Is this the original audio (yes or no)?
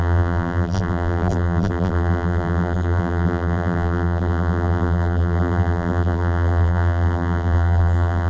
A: no